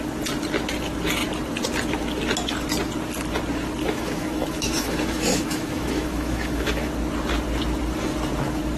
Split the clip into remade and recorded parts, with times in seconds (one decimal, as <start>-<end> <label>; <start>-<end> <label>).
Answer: 0.0-3.8 recorded; 3.8-6.9 remade; 6.9-8.8 recorded